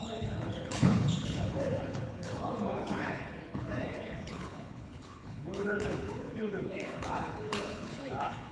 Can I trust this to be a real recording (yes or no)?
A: no